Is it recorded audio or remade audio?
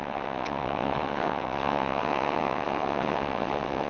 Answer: remade